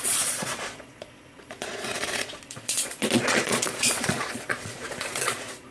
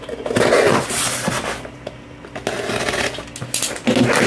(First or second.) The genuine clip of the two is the second